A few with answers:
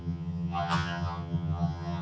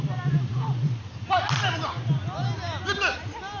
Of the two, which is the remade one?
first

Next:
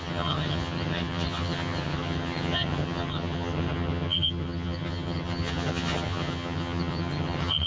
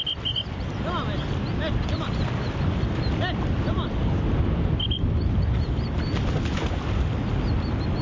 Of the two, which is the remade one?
first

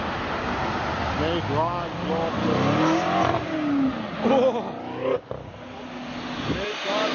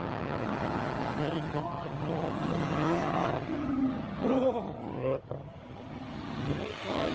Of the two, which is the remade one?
second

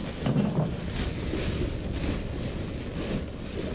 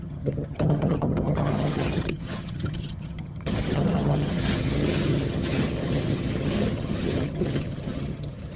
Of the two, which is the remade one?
second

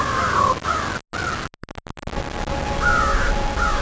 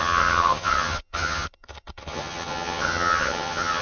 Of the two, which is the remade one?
second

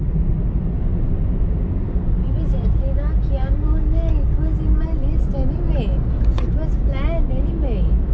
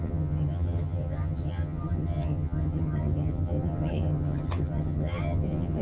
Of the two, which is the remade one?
second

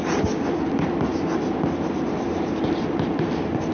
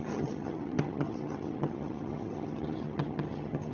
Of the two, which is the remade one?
second